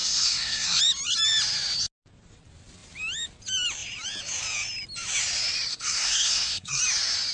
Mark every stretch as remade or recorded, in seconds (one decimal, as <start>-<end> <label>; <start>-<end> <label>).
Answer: 0.0-0.8 remade; 0.8-5.7 recorded; 5.7-6.8 remade; 6.8-7.3 recorded